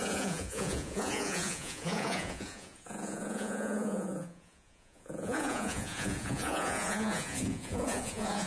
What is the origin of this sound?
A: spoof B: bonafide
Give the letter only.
A